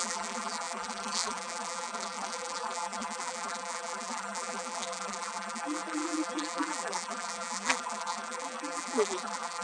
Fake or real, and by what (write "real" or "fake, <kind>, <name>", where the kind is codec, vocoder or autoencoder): fake, vocoder, BigVGAN v2